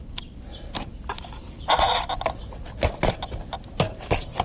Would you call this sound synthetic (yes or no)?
no